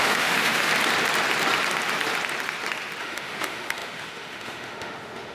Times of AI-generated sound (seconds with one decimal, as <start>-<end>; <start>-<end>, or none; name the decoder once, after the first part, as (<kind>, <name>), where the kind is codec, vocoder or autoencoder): 0.0-0.7 (autoencoder, DAC-VAE); 3.0-5.3